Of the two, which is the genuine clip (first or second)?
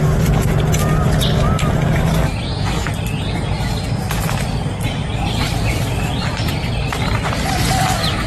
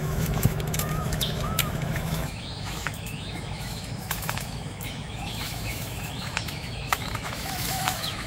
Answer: first